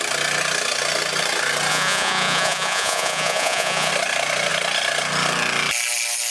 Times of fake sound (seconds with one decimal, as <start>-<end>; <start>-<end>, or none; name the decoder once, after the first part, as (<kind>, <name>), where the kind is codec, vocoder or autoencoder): 1.7-3.9 (vocoder, Vocos)